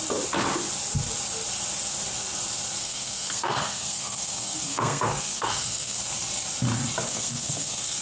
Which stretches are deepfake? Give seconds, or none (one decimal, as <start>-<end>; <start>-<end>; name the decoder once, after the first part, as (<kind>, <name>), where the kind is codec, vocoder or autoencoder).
2.8-6.0 (codec, SNAC); 7.1-8.0